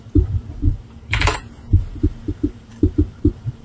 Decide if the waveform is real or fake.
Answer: fake